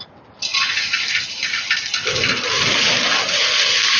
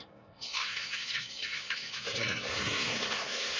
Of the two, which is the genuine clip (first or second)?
first